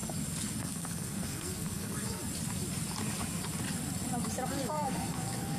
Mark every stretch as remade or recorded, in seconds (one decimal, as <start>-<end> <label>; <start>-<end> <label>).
0.0-0.6 recorded; 0.6-2.2 remade; 2.2-4.7 recorded; 4.7-5.6 remade